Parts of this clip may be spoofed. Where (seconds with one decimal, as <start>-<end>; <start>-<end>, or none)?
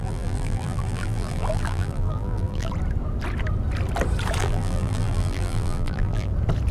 0.0-2.7; 4.4-6.3